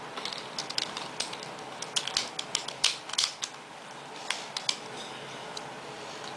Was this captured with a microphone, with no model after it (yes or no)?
yes